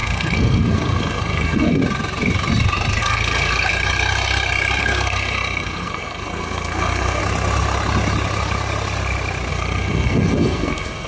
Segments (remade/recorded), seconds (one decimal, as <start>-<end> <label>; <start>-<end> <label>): 0.0-1.8 remade; 1.8-3.0 recorded; 3.0-3.7 remade; 3.7-4.8 recorded; 4.8-7.2 remade; 7.2-9.5 recorded; 9.5-11.1 remade